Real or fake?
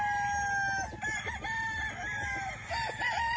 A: real